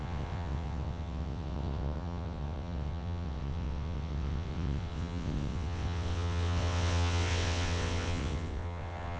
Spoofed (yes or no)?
yes